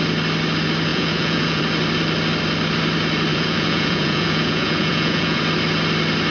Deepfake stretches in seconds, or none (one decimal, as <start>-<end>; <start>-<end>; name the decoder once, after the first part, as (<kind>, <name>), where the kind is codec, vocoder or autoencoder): 0.9-1.6 (vocoder, Vocos); 3.3-5.4